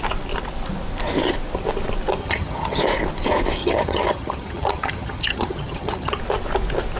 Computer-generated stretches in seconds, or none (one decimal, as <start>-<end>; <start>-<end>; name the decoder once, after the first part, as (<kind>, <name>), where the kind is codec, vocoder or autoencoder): 2.2-2.8 (vocoder, HiFi-GAN); 3.6-6.2